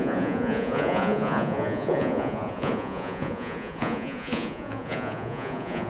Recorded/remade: remade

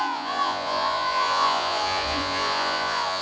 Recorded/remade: remade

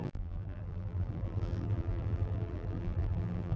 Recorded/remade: remade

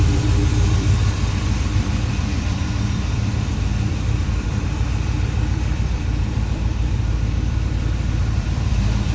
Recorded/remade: remade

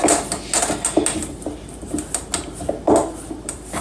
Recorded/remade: recorded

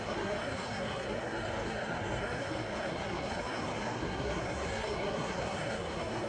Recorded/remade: remade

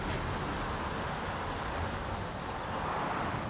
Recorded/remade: recorded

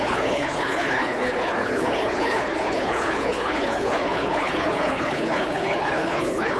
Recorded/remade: remade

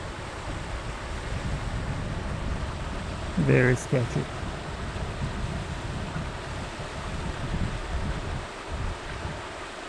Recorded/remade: recorded